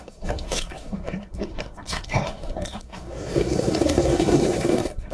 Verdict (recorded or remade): remade